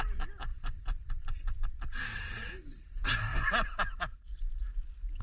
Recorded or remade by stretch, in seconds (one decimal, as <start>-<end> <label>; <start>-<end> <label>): 0.0-0.5 recorded; 0.5-1.2 remade; 1.2-5.2 recorded